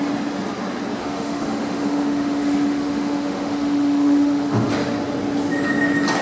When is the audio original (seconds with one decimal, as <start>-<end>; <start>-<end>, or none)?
0.0-1.0; 4.7-6.2